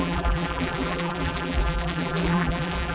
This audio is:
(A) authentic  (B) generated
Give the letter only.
B